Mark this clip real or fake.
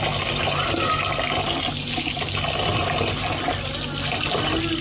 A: real